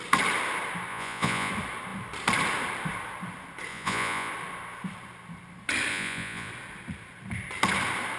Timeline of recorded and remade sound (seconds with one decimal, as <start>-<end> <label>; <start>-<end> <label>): 0.0-0.9 recorded; 0.9-1.5 remade; 1.5-3.7 recorded; 3.7-4.3 remade; 4.3-5.9 recorded; 5.9-6.5 remade; 6.5-8.2 recorded

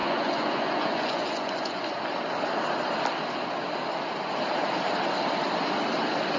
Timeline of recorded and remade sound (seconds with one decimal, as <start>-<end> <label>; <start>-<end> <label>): 0.0-1.9 remade; 1.9-6.4 recorded

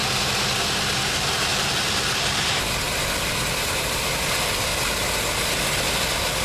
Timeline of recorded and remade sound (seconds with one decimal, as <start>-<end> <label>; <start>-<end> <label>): 0.0-1.1 recorded; 1.1-4.7 remade; 4.7-5.5 recorded; 5.5-6.4 remade

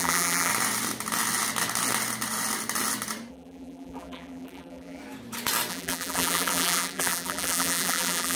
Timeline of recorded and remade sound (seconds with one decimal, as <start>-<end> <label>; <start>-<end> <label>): 0.0-0.5 remade; 0.5-3.3 recorded; 3.3-5.0 remade; 5.0-5.7 recorded; 5.7-8.4 remade